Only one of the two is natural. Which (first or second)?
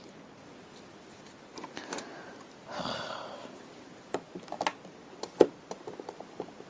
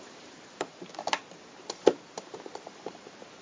first